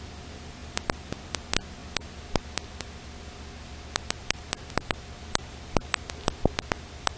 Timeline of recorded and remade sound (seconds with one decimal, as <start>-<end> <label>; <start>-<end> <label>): 0.0-7.2 recorded